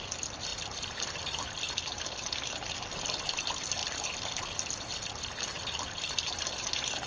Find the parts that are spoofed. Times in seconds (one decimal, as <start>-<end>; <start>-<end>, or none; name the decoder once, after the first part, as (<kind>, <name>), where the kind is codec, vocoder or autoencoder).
0.5-3.4 (vocoder, BigVGAN v2); 3.8-5.2